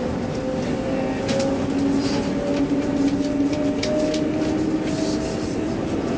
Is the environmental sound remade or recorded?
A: recorded